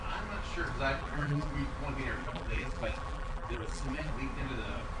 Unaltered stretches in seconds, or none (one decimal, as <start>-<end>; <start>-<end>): 0.0-1.0; 1.5-2.2; 4.1-5.0

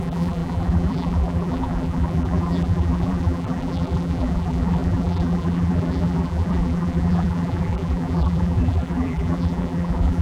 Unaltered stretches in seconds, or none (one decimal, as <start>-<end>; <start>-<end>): none

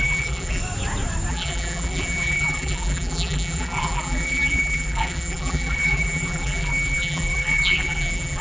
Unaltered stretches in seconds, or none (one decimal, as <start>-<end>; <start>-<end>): 0.6-1.3

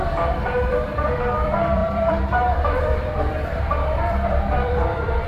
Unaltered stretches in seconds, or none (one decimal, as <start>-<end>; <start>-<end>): none

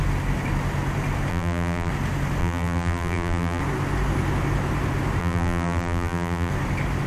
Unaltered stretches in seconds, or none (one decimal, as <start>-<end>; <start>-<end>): 0.0-1.3; 1.9-2.4; 3.6-5.2; 6.5-7.1

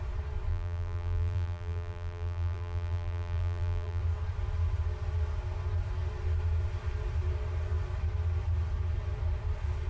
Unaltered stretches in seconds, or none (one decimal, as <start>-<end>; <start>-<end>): 0.0-0.5; 4.0-9.9

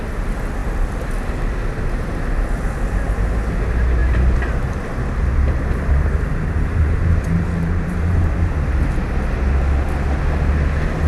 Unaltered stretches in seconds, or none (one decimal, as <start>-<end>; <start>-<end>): 0.0-4.0; 8.7-11.1

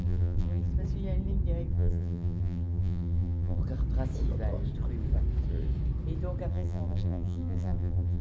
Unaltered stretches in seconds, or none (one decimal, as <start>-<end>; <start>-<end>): 0.7-1.7; 3.6-6.5